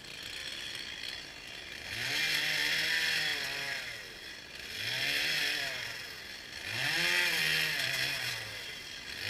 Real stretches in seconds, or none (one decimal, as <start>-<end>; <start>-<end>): 0.0-9.3